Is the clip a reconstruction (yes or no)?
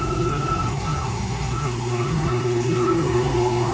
yes